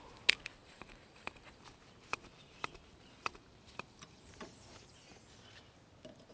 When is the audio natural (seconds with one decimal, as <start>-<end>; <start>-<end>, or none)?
0.0-0.6; 4.3-6.3